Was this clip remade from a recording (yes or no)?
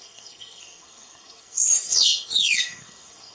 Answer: yes